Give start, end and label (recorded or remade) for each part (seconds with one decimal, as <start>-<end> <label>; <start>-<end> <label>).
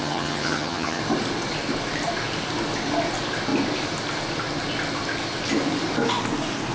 0.0-1.0 remade; 1.0-6.7 recorded